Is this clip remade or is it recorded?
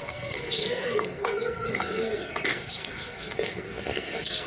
remade